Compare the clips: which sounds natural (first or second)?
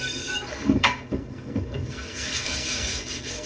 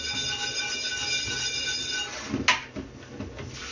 second